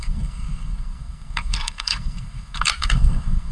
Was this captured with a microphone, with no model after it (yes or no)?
no